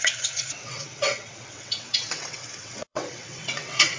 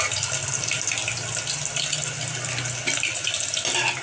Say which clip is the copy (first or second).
first